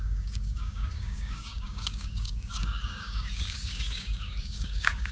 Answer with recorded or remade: remade